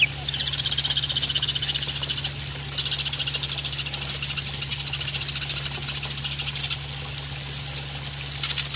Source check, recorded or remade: recorded